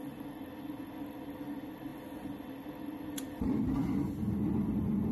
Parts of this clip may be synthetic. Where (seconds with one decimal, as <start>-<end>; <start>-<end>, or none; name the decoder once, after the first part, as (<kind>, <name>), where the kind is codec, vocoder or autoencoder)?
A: none